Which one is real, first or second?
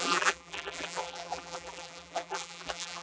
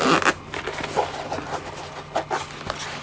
second